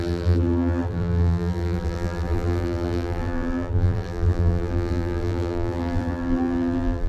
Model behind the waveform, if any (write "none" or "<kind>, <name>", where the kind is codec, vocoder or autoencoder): vocoder, BigVGAN v2